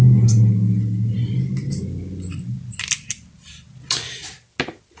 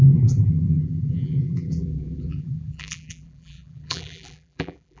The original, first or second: first